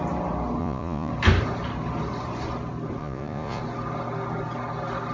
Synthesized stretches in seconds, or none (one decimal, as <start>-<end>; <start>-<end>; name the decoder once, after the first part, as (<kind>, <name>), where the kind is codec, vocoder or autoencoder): 0.6-1.1 (vocoder, Vocos); 3.0-3.6